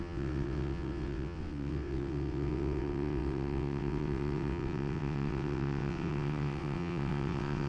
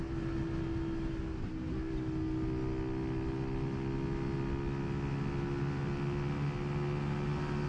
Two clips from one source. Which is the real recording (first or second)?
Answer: second